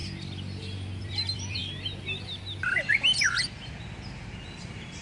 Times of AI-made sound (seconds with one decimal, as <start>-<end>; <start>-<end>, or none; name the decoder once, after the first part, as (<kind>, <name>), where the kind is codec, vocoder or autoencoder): 1.0-1.6 (vocoder, BigVGAN v2); 4.6-5.0